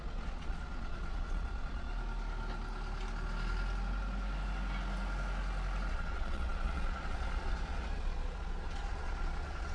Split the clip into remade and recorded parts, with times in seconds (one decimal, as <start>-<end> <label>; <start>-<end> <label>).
0.0-1.9 remade; 1.9-5.9 recorded; 5.9-9.7 remade